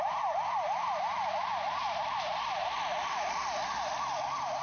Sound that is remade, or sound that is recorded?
recorded